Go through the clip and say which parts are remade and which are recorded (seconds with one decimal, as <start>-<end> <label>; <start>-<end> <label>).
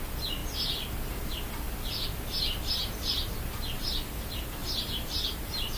0.0-2.8 recorded; 2.8-3.3 remade; 3.3-4.6 recorded; 4.6-5.8 remade